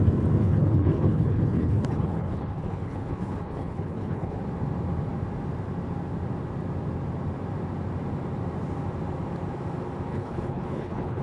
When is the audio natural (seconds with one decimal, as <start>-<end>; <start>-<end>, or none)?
0.0-0.4; 4.4-10.1